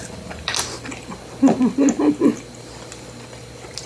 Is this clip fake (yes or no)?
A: no